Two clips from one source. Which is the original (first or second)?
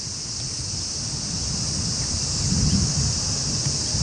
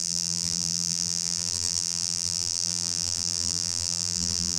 first